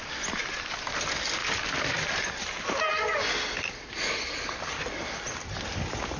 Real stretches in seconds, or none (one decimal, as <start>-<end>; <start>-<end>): 0.0-6.2